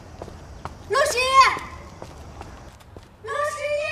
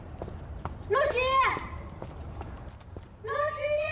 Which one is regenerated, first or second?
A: second